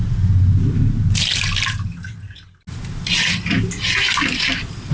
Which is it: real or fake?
real